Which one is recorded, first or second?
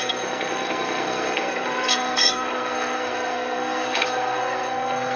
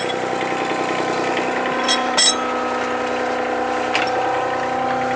second